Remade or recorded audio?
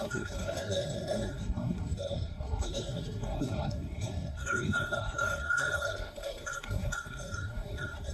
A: remade